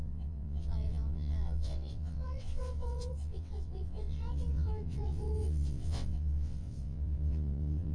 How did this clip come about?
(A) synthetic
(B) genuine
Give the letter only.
A